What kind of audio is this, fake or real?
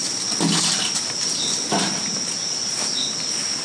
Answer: real